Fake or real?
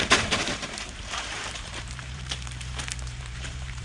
fake